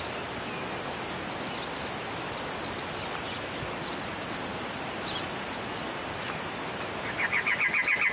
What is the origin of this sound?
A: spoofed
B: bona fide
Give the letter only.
B